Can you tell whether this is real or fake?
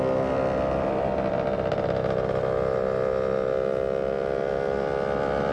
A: real